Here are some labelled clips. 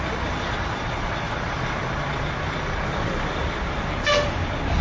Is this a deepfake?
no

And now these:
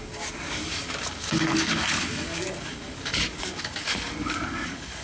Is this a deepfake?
yes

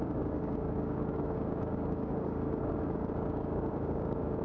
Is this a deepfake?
yes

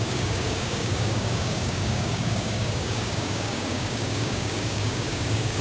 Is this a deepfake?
yes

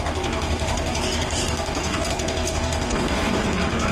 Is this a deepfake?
yes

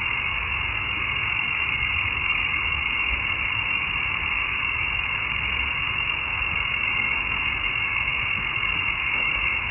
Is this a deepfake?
yes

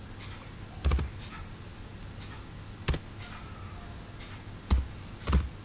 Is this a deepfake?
no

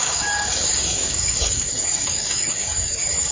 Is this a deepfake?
yes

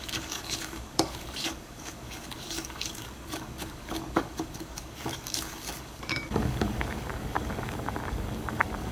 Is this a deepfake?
yes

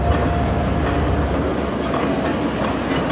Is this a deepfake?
no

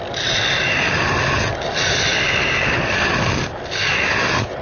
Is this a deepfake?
no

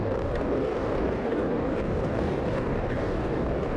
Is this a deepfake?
yes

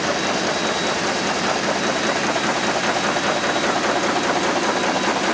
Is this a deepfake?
no